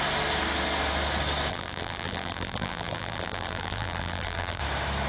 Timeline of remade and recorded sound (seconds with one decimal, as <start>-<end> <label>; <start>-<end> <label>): 0.0-1.5 recorded; 1.5-4.6 remade; 4.6-5.1 recorded